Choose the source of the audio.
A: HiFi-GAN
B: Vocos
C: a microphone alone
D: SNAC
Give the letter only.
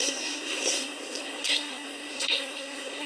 D